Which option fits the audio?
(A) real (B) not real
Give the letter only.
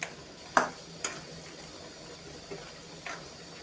A